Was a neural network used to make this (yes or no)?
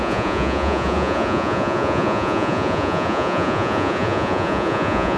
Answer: yes